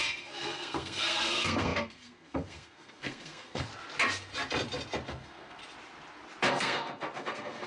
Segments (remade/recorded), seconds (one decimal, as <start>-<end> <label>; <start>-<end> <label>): 0.0-3.7 remade; 3.7-5.1 recorded; 5.1-5.6 remade; 5.6-6.5 recorded; 6.5-7.7 remade

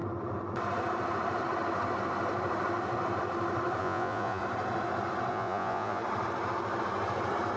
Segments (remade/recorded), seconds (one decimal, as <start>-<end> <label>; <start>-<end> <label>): 0.0-3.8 recorded; 3.8-4.4 remade; 4.4-5.3 recorded; 5.3-6.0 remade; 6.0-7.6 recorded

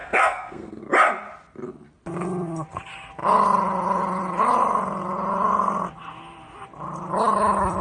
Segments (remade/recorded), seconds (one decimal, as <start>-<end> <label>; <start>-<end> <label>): 0.0-0.8 remade; 0.8-7.8 recorded

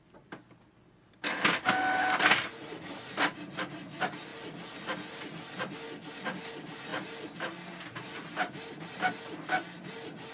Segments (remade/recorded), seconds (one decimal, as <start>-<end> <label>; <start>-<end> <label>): 0.0-10.3 recorded

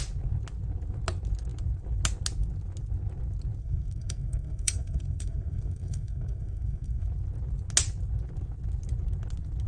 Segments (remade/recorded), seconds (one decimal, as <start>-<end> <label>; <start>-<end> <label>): 0.0-3.6 recorded; 3.6-7.1 remade; 7.1-9.7 recorded

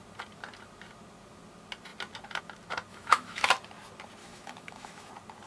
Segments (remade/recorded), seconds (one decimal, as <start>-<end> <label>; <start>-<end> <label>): 0.0-2.9 recorded; 2.9-3.5 remade; 3.5-4.2 recorded; 4.2-5.1 remade; 5.1-5.5 recorded